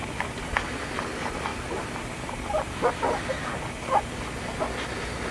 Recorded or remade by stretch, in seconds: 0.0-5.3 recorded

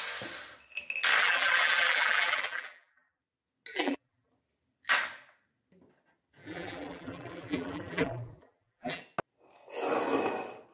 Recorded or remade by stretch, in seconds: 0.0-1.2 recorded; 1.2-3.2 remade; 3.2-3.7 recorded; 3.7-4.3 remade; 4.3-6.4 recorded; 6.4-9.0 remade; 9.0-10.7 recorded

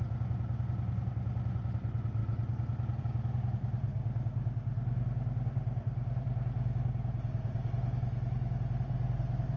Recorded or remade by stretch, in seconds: 0.0-9.6 recorded

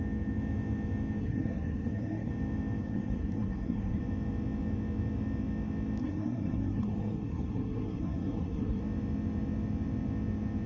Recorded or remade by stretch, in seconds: 0.0-1.2 recorded; 1.2-2.3 remade; 2.3-2.8 recorded; 2.8-4.0 remade; 4.0-6.0 recorded; 6.0-8.8 remade; 8.8-10.7 recorded